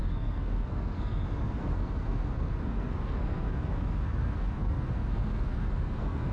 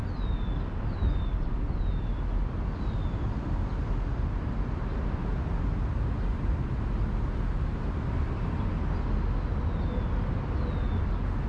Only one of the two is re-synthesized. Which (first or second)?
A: first